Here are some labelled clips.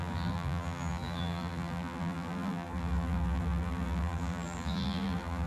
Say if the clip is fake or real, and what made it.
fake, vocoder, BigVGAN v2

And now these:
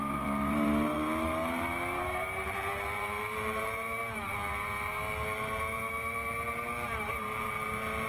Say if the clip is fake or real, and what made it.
fake, vocoder, BigVGAN v2